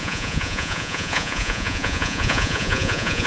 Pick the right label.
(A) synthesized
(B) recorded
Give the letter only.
A